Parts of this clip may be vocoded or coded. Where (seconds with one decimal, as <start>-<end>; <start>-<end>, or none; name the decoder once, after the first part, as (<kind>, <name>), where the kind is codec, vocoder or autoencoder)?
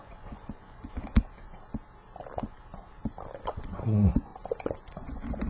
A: 0.0-1.1 (vocoder, Vocos); 3.4-4.3; 4.9-5.5